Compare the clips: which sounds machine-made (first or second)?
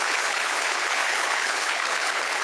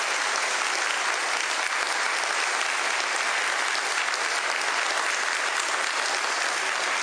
first